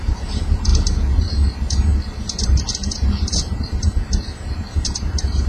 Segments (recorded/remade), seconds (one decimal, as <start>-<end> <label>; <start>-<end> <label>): 0.0-0.7 remade; 0.7-1.2 recorded; 1.2-5.5 remade